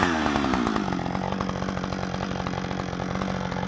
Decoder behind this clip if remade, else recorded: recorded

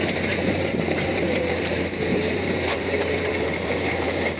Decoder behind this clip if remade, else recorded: remade, vocoder, BigVGAN v2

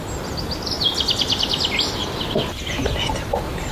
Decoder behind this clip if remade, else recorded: recorded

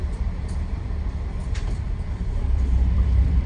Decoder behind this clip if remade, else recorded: remade, vocoder, BigVGAN v2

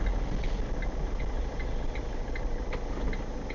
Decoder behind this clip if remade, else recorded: recorded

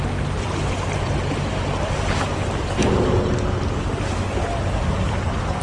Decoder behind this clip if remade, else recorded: recorded